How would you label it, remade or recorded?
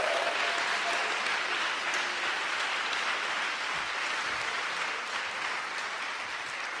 recorded